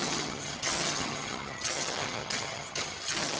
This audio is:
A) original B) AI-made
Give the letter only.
B